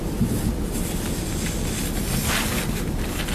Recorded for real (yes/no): yes